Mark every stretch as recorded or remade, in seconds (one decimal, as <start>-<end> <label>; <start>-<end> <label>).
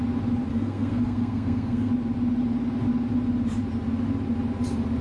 0.0-0.5 recorded; 0.5-1.9 remade; 1.9-5.0 recorded